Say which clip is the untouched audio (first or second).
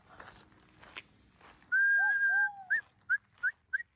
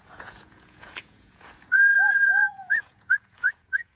first